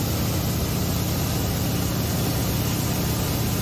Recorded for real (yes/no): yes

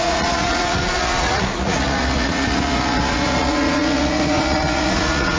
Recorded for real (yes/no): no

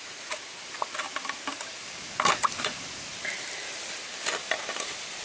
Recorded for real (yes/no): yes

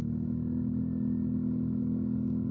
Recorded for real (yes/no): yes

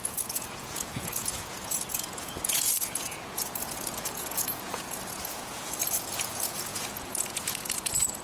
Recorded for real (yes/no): no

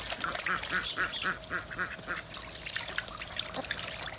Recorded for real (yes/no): yes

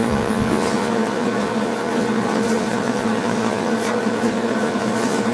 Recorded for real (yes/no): no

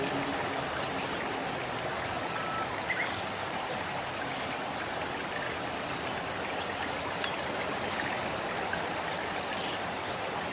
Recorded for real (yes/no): yes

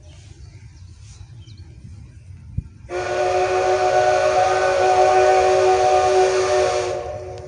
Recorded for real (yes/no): yes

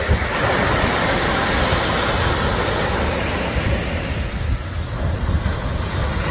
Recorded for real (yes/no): yes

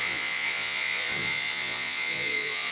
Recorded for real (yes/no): no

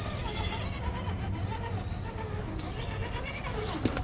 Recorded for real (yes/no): yes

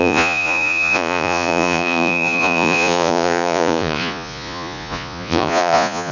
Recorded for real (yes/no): no